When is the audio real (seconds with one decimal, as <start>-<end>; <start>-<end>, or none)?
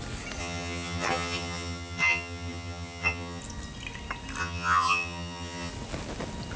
0.0-0.4; 3.4-4.4; 5.7-6.6